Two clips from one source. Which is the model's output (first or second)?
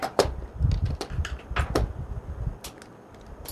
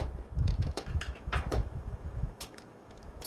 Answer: second